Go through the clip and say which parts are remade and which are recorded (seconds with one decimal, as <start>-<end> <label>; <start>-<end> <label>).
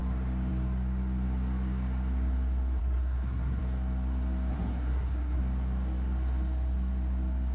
0.0-2.8 recorded; 2.8-3.6 remade; 3.6-4.5 recorded; 4.5-5.4 remade; 5.4-7.5 recorded